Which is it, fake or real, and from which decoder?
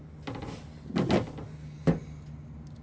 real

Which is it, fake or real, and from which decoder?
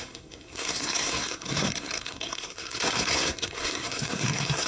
fake, codec, SNAC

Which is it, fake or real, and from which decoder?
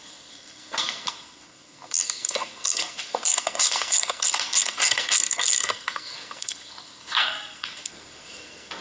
fake, codec, SNAC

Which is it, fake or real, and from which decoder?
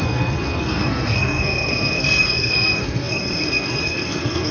fake, codec, SNAC